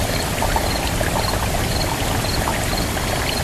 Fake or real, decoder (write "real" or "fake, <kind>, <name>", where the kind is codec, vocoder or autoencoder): real